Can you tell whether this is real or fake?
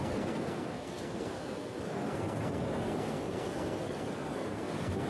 fake